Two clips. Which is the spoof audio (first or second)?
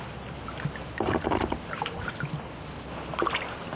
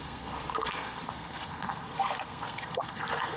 second